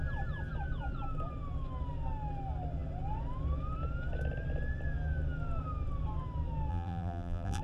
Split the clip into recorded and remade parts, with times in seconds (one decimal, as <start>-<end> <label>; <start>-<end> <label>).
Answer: 0.0-6.7 recorded; 6.7-7.6 remade